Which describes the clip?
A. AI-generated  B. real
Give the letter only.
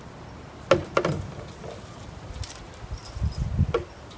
B